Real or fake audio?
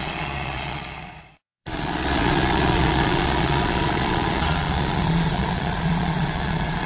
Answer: fake